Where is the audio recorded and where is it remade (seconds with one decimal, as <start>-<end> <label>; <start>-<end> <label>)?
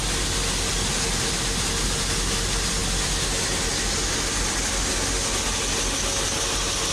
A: 0.0-6.9 recorded